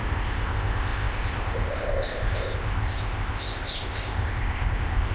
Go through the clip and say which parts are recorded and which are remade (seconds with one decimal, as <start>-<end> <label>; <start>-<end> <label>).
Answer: 0.0-5.1 remade